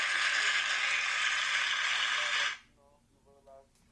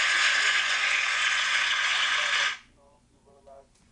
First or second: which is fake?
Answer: second